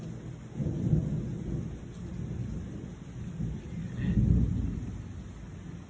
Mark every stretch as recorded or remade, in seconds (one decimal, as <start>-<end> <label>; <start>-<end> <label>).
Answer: 0.0-5.9 recorded